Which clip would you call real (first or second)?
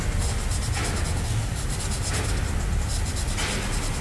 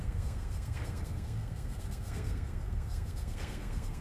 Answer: first